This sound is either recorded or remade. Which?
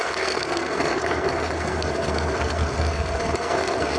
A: remade